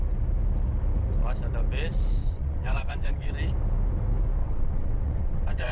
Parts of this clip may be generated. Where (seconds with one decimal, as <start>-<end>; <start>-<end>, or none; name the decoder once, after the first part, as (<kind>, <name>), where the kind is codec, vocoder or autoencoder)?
2.2-3.3 (vocoder, WaveNeXt); 4.4-5.7